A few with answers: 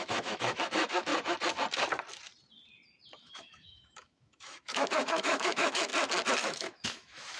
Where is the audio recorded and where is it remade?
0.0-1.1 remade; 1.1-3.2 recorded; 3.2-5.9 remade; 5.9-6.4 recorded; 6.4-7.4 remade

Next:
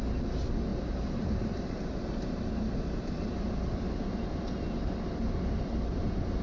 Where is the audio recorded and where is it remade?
0.0-0.7 recorded; 0.7-1.8 remade; 1.8-4.8 recorded; 4.8-5.6 remade; 5.6-6.4 recorded

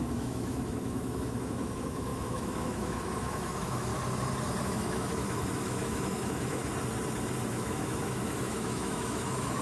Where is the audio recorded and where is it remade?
0.0-3.9 remade; 3.9-4.6 recorded; 4.6-6.6 remade; 6.6-7.5 recorded; 7.5-9.6 remade

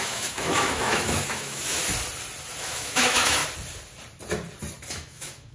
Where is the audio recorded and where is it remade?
0.0-1.8 remade; 1.8-2.6 recorded; 2.6-3.4 remade; 3.4-4.9 recorded; 4.9-5.5 remade

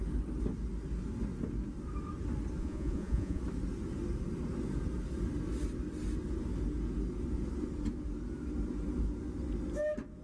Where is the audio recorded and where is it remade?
0.0-2.6 recorded; 2.6-3.4 remade; 3.4-10.2 recorded

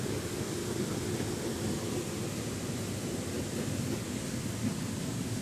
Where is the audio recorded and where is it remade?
0.0-0.6 remade; 0.6-3.8 recorded; 3.8-4.4 remade; 4.4-5.0 recorded; 5.0-5.4 remade

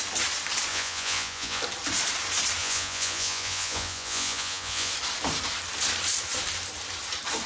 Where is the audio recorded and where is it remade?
0.0-0.7 recorded; 0.7-1.6 remade; 1.6-2.6 recorded; 2.6-4.9 remade; 4.9-7.5 recorded

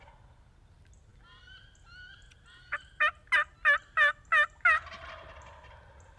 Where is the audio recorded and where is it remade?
0.0-6.2 recorded